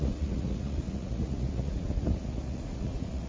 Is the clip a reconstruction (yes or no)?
yes